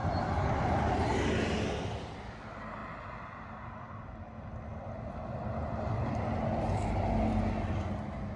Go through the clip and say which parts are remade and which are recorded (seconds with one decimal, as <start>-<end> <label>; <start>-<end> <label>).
0.0-0.7 remade; 0.7-2.8 recorded; 2.8-4.2 remade; 4.2-8.4 recorded